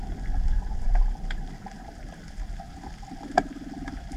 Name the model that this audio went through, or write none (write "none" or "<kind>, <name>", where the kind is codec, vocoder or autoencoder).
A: none